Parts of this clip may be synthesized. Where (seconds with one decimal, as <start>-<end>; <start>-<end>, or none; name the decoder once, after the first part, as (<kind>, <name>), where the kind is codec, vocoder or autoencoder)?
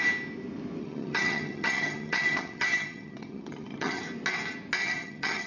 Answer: 0.8-4.0 (vocoder, HiFi-GAN); 4.8-5.5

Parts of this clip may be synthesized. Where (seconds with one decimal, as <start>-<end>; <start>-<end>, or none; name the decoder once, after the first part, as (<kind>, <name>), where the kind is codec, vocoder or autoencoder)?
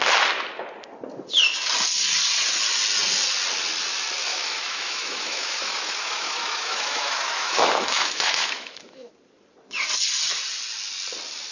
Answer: 4.3-9.1 (autoencoder, DAC-VAE)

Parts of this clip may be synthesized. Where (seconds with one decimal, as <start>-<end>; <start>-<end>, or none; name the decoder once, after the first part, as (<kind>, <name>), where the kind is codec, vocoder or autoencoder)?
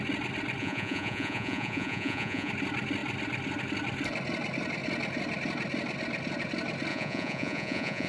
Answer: 0.6-2.5 (vocoder, Vocos); 6.9-8.1